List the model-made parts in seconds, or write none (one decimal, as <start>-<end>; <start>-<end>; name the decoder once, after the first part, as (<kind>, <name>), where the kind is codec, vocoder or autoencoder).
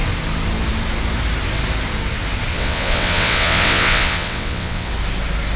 2.5-4.9 (vocoder, WaveNeXt)